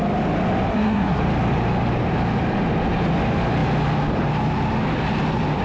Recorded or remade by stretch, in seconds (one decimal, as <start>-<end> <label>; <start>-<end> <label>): 0.0-0.7 recorded; 0.7-1.2 remade; 1.2-5.6 recorded